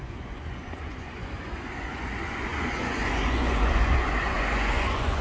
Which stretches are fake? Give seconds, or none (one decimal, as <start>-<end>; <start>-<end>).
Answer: 0.0-5.2